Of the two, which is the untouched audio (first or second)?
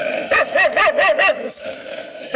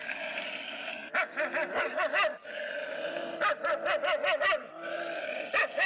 second